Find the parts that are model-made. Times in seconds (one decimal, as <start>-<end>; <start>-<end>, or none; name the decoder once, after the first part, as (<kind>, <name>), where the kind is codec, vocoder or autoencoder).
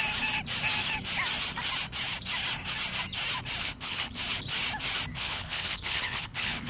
3.6-4.2 (codec, HILCodec); 5.1-6.7